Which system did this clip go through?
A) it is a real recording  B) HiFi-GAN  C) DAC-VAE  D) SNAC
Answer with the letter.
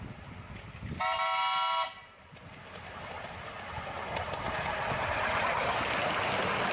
A